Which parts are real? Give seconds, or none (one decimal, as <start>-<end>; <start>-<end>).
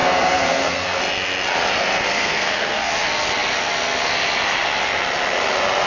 1.0-2.1; 2.9-5.9